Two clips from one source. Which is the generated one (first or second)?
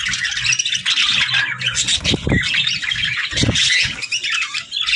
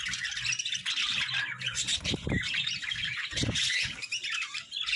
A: second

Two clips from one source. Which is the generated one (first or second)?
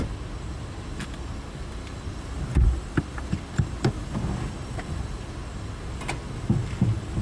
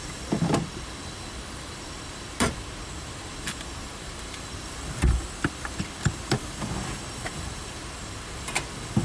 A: second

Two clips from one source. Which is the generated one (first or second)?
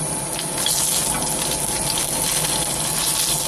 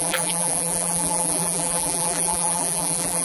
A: second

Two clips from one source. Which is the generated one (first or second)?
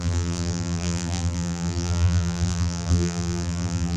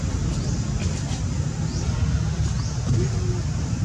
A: first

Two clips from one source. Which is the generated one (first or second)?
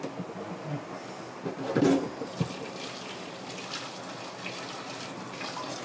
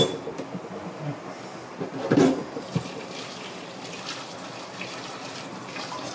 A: second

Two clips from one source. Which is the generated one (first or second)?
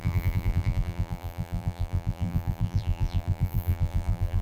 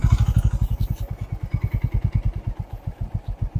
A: first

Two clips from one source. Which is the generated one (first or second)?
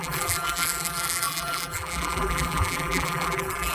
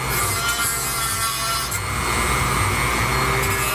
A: first